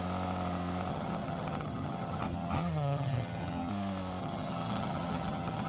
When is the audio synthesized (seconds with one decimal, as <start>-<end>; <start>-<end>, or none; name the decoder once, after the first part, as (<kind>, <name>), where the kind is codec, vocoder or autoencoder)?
0.9-3.7 (vocoder, HiFi-GAN); 4.2-5.7